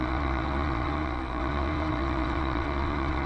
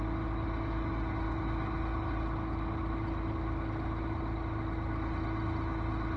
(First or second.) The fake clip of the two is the first